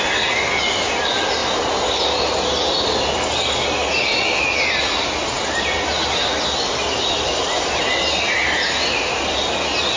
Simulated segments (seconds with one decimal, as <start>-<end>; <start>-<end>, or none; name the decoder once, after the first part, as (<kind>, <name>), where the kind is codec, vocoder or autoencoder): none